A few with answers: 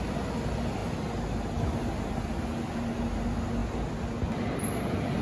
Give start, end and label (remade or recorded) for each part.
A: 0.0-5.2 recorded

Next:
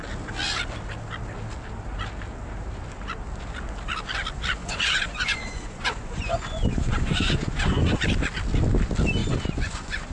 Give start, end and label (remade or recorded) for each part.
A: 0.0-4.6 recorded; 4.6-8.0 remade; 8.0-9.2 recorded; 9.2-10.1 remade

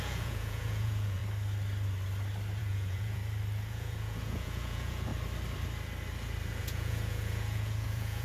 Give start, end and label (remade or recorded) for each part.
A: 0.0-1.2 remade; 1.2-2.6 recorded; 2.6-3.2 remade; 3.2-3.7 recorded; 3.7-5.1 remade; 5.1-6.6 recorded; 6.6-8.2 remade

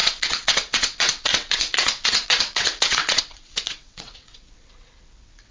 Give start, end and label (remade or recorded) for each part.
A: 0.0-5.5 remade

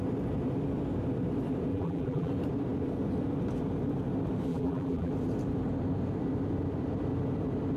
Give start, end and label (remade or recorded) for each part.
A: 0.0-1.7 recorded; 1.7-2.3 remade; 2.3-4.5 recorded; 4.5-5.1 remade; 5.1-7.8 recorded

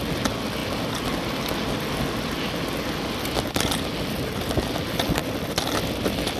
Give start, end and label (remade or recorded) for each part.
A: 0.0-5.2 recorded; 5.2-6.4 remade